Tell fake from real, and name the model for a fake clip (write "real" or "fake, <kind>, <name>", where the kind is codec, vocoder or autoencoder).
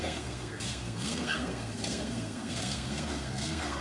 fake, codec, SNAC